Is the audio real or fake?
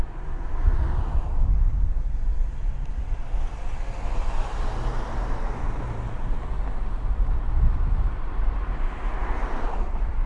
real